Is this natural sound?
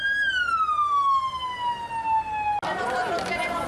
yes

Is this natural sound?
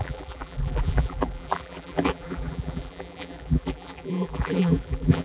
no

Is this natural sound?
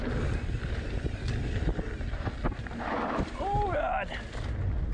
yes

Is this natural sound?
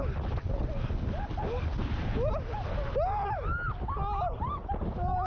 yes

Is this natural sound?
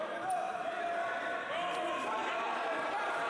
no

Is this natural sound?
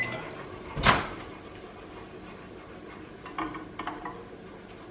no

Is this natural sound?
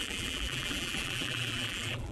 no